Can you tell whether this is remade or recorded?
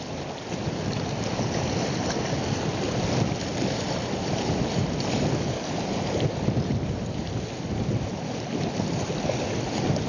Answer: recorded